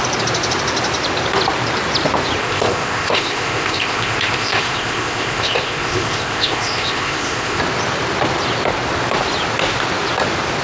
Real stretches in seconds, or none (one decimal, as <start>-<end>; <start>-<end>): 0.0-2.4; 7.6-10.6